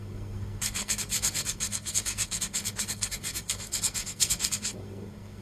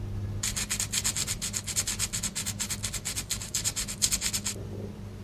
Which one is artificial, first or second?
first